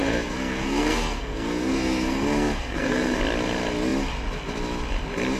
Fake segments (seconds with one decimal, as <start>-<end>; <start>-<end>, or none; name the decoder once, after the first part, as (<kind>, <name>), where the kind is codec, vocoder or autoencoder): 0.0-3.2 (codec, SNAC)

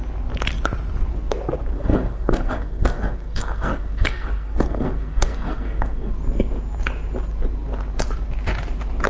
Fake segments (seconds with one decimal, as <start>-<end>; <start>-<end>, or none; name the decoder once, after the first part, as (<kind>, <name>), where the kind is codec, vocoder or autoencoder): 1.7-6.1 (codec, SNAC)

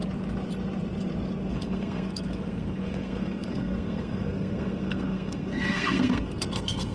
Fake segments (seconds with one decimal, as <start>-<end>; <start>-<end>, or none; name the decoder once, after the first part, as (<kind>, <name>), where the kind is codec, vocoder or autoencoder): 1.5-6.9 (codec, SNAC)

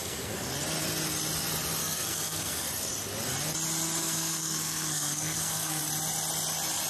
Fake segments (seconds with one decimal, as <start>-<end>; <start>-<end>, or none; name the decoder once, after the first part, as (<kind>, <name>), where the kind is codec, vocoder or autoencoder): 0.0-0.5 (codec, SNAC); 1.8-2.7; 4.0-5.8

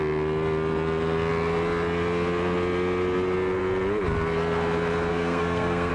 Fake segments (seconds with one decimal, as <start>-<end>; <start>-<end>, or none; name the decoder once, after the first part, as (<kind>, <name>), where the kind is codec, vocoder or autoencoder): 5.1-5.9 (codec, SNAC)

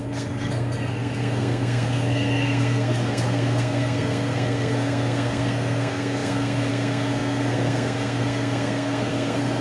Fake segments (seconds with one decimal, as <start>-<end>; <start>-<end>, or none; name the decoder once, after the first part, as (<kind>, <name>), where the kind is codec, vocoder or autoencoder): 0.0-9.6 (codec, SNAC)

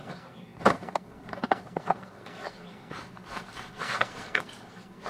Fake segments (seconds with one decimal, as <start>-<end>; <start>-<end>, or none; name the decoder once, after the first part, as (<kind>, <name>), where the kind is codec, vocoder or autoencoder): 0.0-5.1 (codec, SNAC)

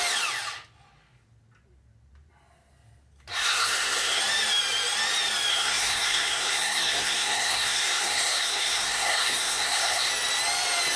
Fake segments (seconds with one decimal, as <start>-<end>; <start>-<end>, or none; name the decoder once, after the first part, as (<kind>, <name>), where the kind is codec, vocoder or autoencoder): 3.3-4.2 (codec, SNAC); 5.5-10.1